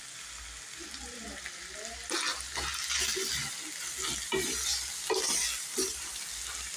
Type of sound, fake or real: real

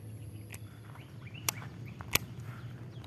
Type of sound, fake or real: real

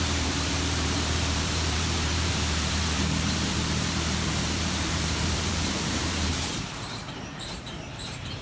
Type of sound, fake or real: fake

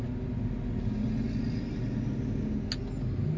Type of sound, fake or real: real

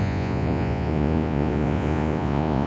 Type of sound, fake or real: fake